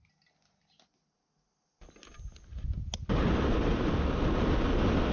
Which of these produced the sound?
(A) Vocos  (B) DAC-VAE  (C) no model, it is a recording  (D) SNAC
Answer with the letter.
C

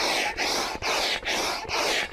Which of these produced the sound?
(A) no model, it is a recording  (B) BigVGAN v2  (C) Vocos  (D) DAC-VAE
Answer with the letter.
A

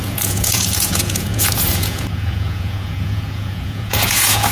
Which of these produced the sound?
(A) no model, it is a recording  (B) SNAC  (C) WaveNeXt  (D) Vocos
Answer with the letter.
D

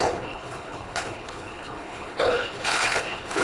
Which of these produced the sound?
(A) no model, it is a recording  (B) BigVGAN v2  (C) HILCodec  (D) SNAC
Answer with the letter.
C